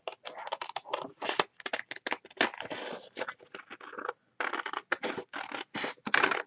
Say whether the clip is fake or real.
real